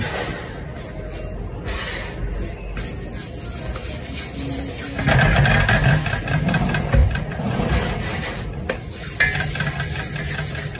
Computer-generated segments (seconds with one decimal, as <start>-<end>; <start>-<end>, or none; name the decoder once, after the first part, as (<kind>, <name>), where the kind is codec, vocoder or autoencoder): 7.0-7.6 (vocoder, Vocos)